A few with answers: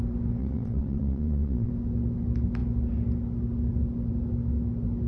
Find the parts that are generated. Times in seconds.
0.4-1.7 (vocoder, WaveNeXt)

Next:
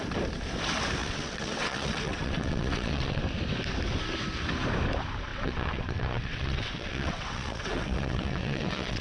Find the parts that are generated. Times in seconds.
1.0-3.2 (vocoder, WaveNeXt); 5.3-9.0